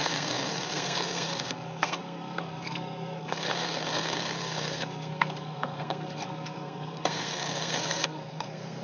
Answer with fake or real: fake